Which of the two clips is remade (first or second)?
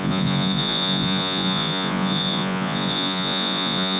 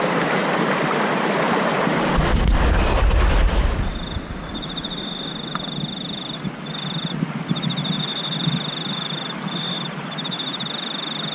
first